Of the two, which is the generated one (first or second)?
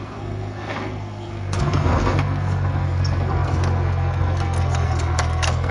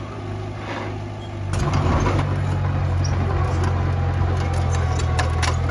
first